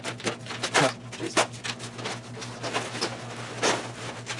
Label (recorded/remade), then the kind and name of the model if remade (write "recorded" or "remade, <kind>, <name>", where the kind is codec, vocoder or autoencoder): recorded